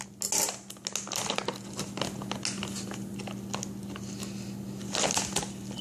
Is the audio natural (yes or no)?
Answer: yes